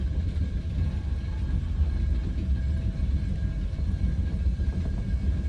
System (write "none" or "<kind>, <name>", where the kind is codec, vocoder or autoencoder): none